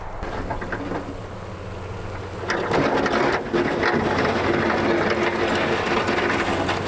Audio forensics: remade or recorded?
recorded